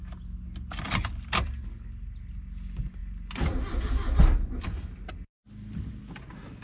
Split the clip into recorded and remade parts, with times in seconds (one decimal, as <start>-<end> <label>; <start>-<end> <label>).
0.0-6.6 recorded